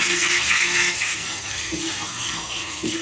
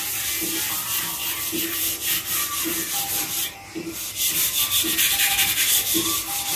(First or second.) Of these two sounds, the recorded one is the second